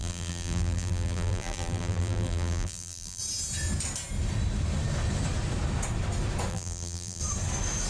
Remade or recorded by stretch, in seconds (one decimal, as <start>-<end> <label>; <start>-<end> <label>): 0.0-3.2 remade; 3.2-6.5 recorded; 6.5-7.2 remade; 7.2-7.9 recorded